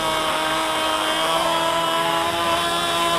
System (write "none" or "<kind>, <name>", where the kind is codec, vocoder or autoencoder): codec, SNAC